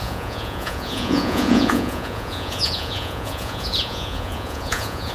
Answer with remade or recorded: remade